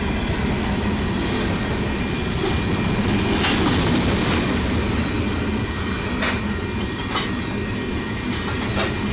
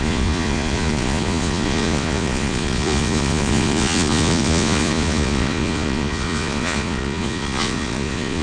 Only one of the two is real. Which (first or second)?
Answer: first